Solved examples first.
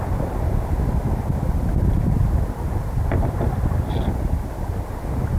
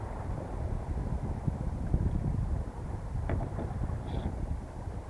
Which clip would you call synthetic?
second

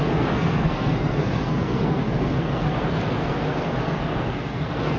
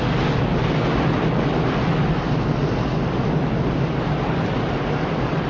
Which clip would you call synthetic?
first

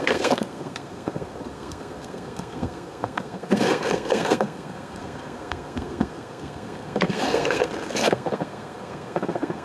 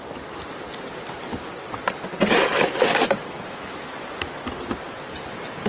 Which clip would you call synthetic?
first